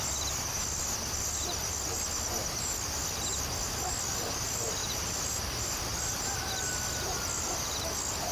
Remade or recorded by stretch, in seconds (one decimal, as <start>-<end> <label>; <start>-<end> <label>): 0.0-8.3 recorded